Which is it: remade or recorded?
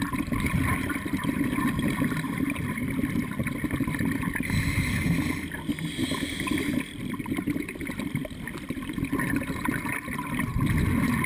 recorded